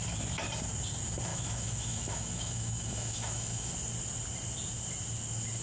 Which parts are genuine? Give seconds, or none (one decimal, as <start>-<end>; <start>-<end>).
0.0-1.3; 3.7-5.6